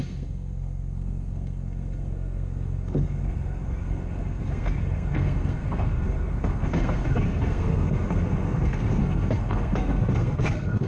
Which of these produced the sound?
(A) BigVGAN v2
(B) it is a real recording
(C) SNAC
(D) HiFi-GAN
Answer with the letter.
C